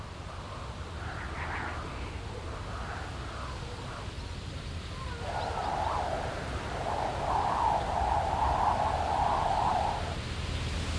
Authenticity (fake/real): real